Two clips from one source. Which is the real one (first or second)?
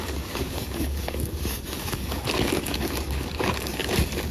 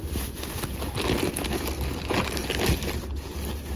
second